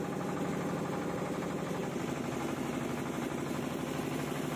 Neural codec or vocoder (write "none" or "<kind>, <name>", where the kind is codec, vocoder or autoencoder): none